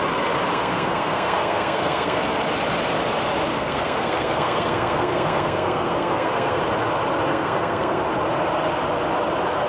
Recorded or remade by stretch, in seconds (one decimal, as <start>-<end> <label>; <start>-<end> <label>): 0.0-0.5 recorded; 0.5-2.2 remade; 2.2-3.5 recorded; 3.5-6.6 remade; 6.6-7.3 recorded; 7.3-8.0 remade; 8.0-9.7 recorded